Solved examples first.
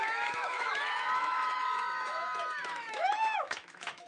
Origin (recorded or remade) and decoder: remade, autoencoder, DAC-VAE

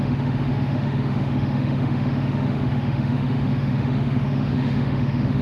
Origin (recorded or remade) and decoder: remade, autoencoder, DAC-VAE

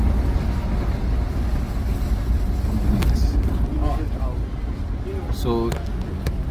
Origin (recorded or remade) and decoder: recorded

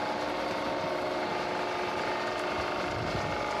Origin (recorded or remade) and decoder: recorded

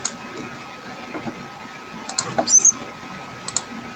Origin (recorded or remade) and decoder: recorded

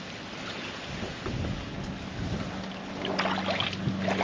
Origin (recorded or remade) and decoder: recorded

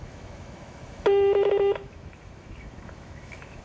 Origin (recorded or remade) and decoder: remade, autoencoder, DAC-VAE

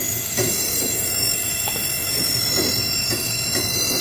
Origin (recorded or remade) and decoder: remade, autoencoder, DAC-VAE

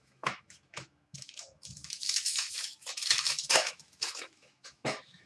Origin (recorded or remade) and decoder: remade, autoencoder, DAC-VAE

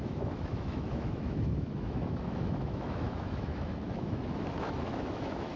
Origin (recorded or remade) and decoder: remade, autoencoder, DAC-VAE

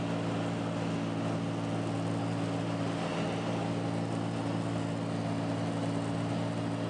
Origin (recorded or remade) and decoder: recorded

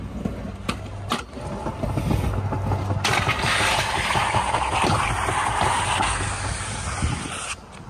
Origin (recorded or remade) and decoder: recorded